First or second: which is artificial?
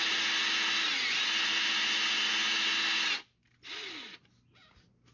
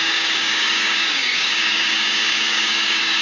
second